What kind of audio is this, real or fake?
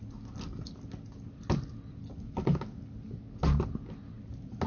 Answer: real